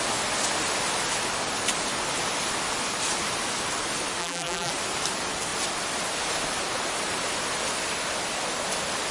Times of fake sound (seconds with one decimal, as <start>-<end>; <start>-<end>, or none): 4.2-4.7